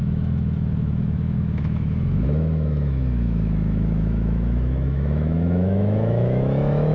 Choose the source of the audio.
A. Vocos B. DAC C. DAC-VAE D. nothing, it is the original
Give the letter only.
C